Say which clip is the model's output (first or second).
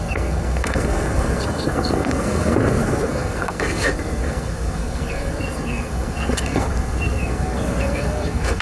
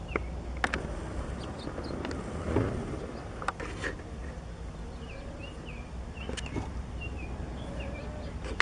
first